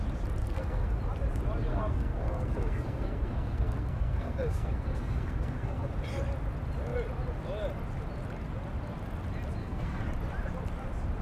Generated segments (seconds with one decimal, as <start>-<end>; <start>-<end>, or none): 0.4-1.0; 1.7-5.9; 9.6-10.1